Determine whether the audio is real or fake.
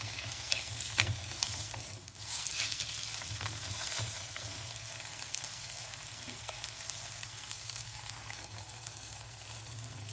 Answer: fake